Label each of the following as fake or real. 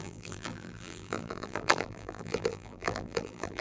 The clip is fake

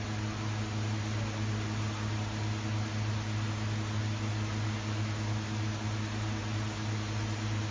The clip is real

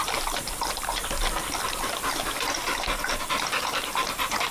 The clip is fake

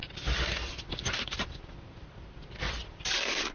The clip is fake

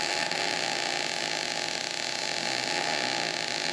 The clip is real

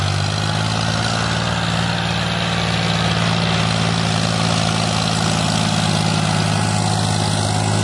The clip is real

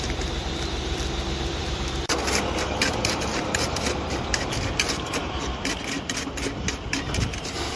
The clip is fake